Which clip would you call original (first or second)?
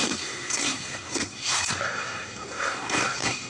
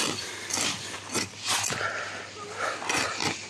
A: second